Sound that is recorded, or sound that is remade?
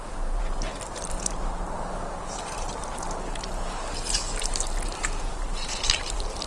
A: remade